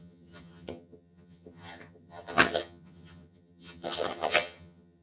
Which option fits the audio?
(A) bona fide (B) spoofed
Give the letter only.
B